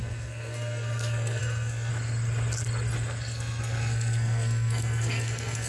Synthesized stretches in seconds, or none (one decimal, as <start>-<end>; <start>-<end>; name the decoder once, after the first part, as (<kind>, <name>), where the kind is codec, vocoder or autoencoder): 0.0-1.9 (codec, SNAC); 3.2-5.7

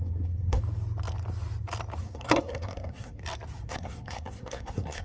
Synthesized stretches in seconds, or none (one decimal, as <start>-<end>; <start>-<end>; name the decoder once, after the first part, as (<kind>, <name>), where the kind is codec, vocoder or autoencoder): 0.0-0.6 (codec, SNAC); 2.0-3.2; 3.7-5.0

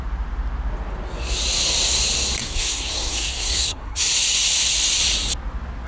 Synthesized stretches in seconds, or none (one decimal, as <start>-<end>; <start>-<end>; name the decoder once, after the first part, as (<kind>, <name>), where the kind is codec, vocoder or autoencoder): 2.4-4.0 (codec, SNAC)

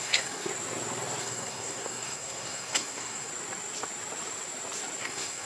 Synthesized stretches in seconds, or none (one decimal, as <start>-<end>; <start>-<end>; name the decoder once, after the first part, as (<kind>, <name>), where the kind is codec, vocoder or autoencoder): 0.0-0.5 (codec, SNAC); 1.2-3.3; 5.0-5.5

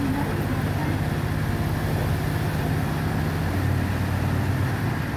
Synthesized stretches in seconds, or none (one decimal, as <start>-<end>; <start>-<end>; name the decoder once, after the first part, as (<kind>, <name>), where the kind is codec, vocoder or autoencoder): none

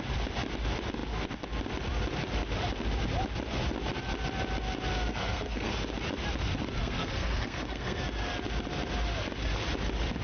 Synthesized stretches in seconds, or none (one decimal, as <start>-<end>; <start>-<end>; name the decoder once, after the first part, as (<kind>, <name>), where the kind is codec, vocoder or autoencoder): 5.1-5.7 (codec, SNAC); 6.8-8.0

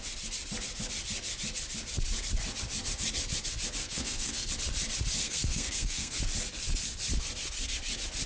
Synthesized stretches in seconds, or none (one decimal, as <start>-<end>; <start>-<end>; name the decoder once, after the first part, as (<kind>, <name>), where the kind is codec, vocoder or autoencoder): 3.8-4.5 (codec, SNAC); 5.2-6.2

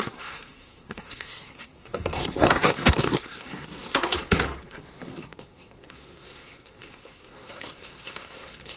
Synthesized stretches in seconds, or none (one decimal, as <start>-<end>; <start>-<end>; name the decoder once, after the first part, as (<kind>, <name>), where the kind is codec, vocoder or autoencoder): 0.0-8.8 (codec, SNAC)